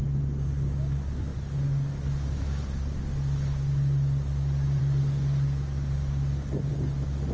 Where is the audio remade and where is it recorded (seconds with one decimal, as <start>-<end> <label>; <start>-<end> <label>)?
0.0-7.3 recorded